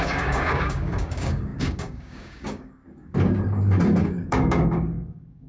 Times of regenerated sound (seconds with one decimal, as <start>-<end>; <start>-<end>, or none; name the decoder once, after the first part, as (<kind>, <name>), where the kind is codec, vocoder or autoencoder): 0.0-2.8 (codec, DAC); 4.0-5.5